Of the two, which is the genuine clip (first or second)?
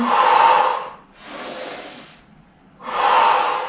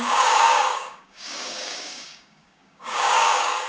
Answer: first